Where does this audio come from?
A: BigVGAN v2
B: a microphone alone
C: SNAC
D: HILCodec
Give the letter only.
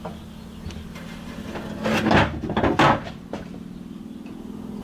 B